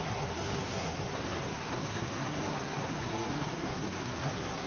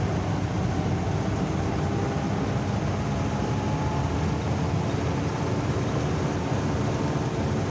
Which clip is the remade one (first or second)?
first